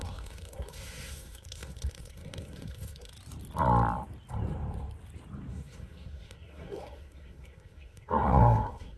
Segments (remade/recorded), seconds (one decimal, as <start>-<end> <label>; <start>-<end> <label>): 0.0-3.1 remade; 3.1-5.5 recorded; 5.5-9.0 remade